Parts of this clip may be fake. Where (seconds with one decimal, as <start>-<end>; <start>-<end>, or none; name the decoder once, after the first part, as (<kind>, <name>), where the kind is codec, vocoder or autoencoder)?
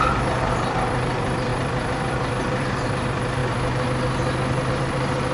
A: 0.0-3.4 (vocoder, BigVGAN v2); 4.7-5.3